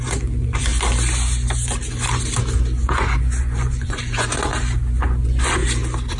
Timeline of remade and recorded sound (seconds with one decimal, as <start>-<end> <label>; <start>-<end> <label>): 0.0-0.7 remade; 0.7-2.8 recorded; 2.8-4.5 remade; 4.5-5.0 recorded; 5.0-5.6 remade; 5.6-6.2 recorded